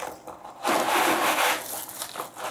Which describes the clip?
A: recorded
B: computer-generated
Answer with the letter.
A